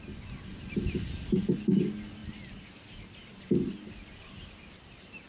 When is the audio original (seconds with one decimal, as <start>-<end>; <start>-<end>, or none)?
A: 0.0-5.3